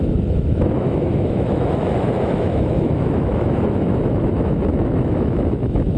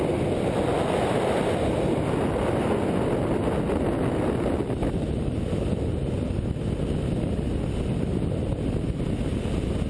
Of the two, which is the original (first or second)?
second